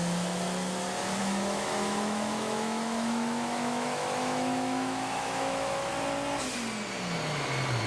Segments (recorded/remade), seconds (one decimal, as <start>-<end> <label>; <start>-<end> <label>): 0.0-1.2 recorded; 1.2-5.9 remade; 5.9-7.9 recorded